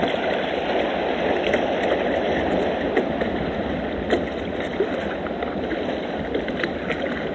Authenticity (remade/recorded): recorded